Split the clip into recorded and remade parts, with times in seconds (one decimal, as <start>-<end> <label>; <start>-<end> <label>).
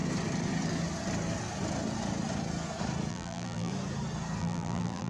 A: 0.0-3.1 recorded; 3.1-3.7 remade; 3.7-4.4 recorded; 4.4-5.1 remade